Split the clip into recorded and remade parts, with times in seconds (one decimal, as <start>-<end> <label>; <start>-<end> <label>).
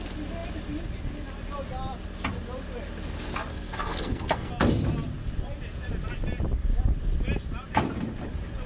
0.0-3.5 recorded; 3.5-4.5 remade; 4.5-8.7 recorded